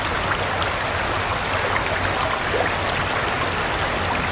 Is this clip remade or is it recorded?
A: recorded